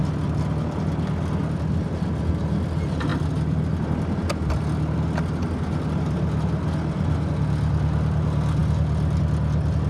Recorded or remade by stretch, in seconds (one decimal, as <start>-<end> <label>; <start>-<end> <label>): 0.0-9.9 recorded